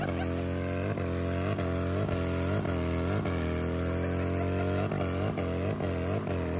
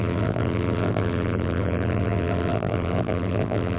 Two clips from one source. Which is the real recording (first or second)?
first